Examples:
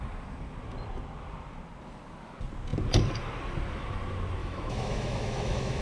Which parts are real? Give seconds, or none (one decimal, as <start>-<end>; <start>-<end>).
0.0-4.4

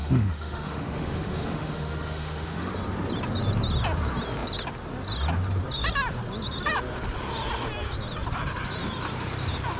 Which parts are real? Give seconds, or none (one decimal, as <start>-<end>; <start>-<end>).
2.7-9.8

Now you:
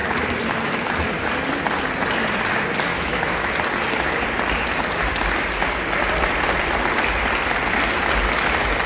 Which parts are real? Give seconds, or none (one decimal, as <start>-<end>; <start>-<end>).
0.0-2.9; 3.5-8.9

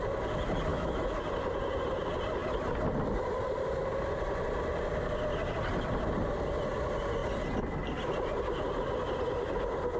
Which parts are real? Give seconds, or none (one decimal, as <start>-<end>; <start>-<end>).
0.0-0.7; 1.2-10.0

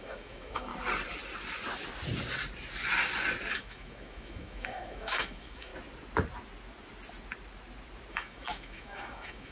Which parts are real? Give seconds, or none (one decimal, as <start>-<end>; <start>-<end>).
0.7-3.5; 5.7-8.1

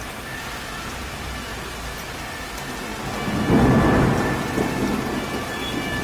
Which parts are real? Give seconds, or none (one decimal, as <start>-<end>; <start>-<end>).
0.0-6.0

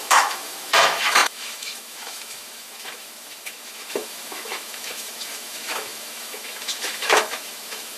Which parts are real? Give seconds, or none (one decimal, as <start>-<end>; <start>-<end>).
none